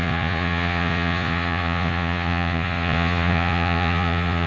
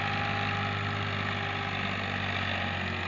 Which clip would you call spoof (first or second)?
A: first